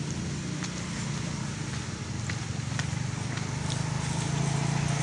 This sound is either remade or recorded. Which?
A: recorded